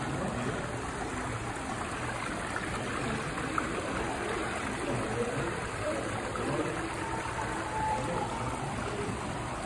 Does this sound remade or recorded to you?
remade